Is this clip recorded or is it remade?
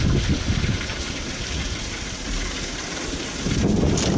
recorded